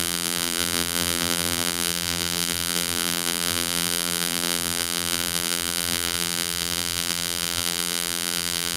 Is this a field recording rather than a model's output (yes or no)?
no